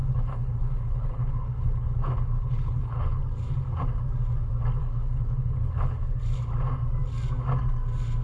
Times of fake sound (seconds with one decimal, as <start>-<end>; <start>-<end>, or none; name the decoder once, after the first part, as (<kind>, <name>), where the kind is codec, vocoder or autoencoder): 0.0-3.2 (codec, HILCodec); 4.8-6.2